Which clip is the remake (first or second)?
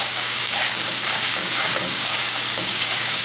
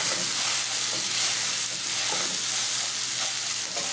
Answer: first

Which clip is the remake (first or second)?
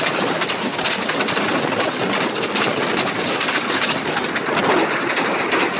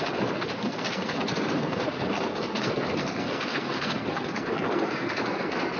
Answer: second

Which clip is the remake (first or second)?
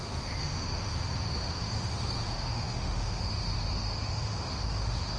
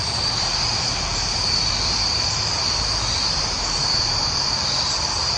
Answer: first